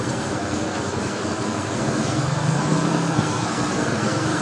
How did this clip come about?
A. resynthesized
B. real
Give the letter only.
A